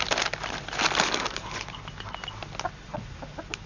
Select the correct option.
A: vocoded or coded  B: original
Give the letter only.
B